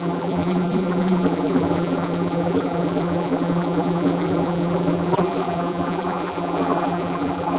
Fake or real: fake